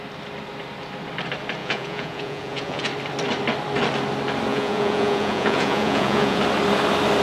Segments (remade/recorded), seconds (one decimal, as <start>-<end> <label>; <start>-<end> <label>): 0.0-1.6 recorded; 1.6-2.9 remade; 2.9-4.5 recorded; 4.5-6.4 remade; 6.4-7.2 recorded